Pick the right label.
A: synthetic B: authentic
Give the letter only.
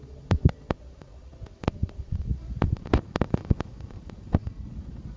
A